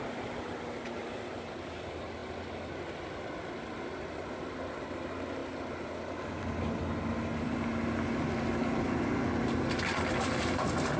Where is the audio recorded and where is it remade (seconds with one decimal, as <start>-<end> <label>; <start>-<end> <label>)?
0.0-11.0 recorded